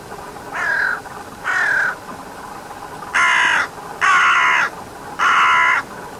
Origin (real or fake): real